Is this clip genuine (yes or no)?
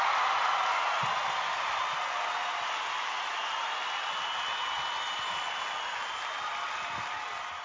yes